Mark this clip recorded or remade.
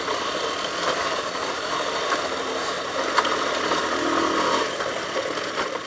recorded